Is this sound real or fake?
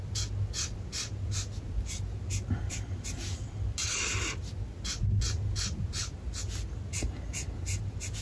real